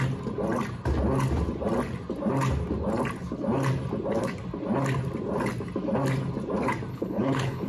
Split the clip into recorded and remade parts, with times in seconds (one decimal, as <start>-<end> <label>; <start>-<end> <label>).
0.0-6.9 recorded; 6.9-7.7 remade